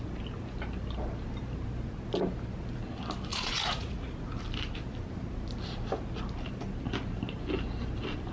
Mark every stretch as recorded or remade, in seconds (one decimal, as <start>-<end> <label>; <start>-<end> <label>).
0.0-3.3 recorded; 3.3-4.3 remade; 4.3-8.3 recorded